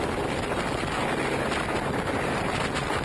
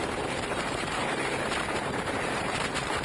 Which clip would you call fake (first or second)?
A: second